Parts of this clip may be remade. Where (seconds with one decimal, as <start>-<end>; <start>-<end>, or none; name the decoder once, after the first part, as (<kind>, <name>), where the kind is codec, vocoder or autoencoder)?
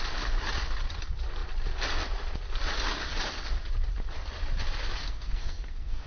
5.0-6.1 (codec, SNAC)